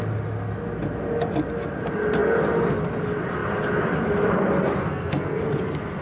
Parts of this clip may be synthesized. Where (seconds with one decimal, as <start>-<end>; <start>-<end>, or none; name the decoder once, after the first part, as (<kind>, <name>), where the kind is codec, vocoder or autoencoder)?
4.8-5.4 (codec, SNAC)

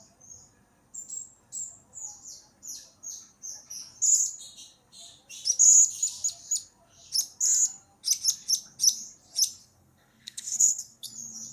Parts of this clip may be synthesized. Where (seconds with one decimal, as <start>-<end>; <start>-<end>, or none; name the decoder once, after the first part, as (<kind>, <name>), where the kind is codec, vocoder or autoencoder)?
9.6-11.1 (codec, SNAC)

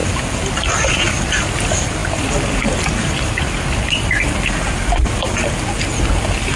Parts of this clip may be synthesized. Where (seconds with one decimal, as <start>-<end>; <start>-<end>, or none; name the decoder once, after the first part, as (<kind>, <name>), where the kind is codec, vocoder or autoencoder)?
none

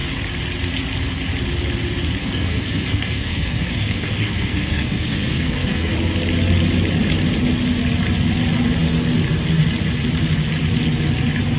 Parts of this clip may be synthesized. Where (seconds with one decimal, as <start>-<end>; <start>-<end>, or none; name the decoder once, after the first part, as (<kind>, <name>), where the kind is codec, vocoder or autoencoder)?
2.2-5.9 (codec, SNAC)

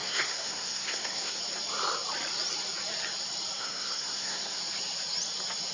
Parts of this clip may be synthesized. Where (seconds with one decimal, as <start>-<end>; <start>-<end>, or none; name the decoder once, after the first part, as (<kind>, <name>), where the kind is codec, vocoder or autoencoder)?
0.0-1.4 (codec, SNAC); 3.6-4.6

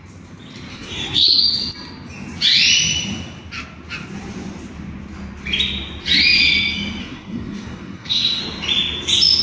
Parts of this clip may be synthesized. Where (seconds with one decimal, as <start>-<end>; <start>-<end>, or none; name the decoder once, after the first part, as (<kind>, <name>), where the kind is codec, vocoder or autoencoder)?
0.7-1.4 (codec, SNAC); 7.0-8.4

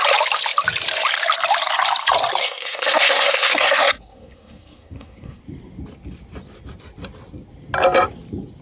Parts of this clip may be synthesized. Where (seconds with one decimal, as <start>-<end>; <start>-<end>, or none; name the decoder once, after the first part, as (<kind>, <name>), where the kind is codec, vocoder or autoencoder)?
2.4-5.4 (codec, SNAC)

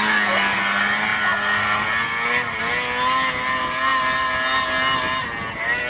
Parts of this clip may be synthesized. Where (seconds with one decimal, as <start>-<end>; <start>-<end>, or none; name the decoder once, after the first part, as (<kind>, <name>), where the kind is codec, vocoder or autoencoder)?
none